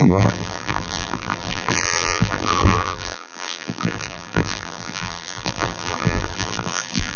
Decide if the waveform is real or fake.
fake